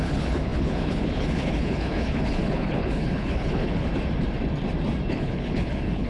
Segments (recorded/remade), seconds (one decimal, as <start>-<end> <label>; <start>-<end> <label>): 0.0-3.9 remade; 3.9-5.1 recorded; 5.1-6.1 remade